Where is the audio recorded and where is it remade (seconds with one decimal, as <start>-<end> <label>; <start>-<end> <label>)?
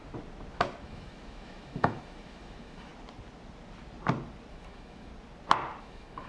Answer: 0.0-0.8 recorded; 0.8-2.9 remade; 2.9-4.5 recorded; 4.5-5.1 remade; 5.1-5.8 recorded; 5.8-6.3 remade